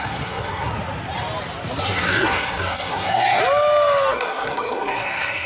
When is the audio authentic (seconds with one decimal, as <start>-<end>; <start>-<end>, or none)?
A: 0.7-1.8; 3.4-4.1